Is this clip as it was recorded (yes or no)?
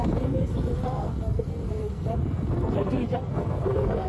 no